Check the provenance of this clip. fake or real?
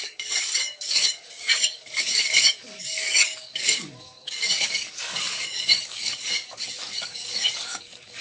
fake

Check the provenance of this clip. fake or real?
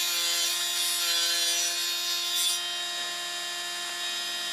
real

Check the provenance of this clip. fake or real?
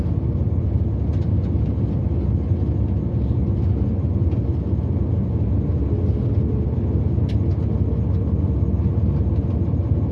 real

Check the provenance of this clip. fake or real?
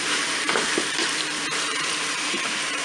fake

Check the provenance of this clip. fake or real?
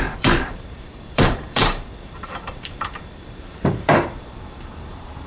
fake